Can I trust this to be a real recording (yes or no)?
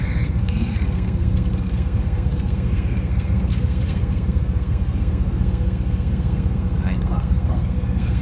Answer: no